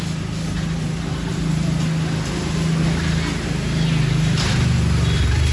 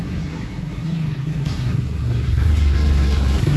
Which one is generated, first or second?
second